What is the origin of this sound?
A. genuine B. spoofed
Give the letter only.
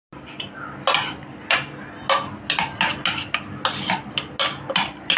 A